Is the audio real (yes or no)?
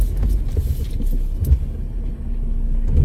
yes